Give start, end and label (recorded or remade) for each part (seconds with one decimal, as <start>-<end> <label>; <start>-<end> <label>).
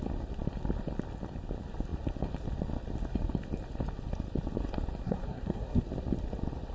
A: 0.0-5.0 recorded; 5.0-5.8 remade; 5.8-6.7 recorded